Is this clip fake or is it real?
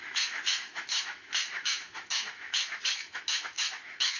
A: fake